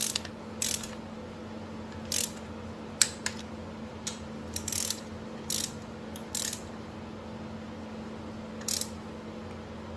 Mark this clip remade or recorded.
recorded